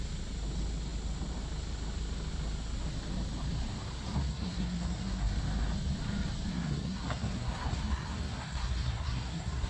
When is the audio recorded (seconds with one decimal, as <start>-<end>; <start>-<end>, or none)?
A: 0.0-4.3; 5.3-6.5